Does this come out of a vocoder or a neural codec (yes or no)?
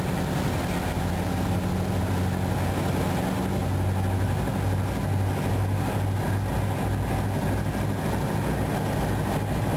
no